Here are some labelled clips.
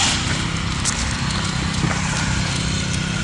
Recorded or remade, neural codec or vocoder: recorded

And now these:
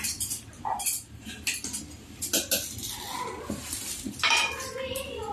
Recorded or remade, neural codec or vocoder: recorded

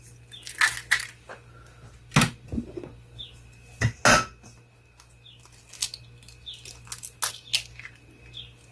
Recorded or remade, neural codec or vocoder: recorded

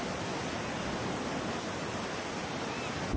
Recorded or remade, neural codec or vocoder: recorded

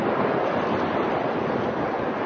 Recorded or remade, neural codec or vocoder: recorded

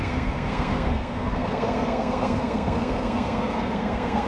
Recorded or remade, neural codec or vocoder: remade, codec, SNAC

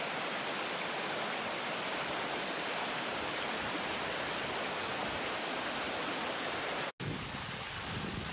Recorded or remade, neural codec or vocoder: recorded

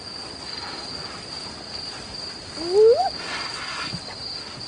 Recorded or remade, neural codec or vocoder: recorded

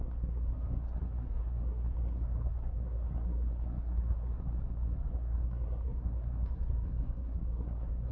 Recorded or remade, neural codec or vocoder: remade, codec, SNAC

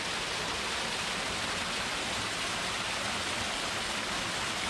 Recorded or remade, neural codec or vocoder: recorded